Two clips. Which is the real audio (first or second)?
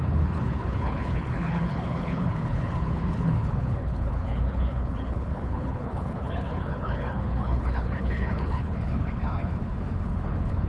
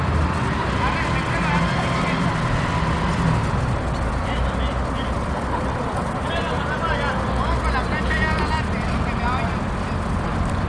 second